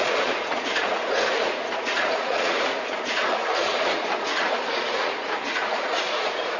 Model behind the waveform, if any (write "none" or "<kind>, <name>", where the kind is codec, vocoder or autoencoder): vocoder, Vocos